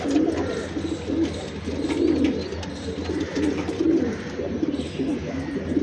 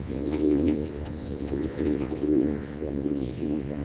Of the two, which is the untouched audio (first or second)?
first